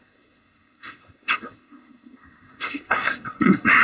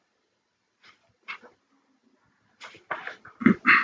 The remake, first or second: first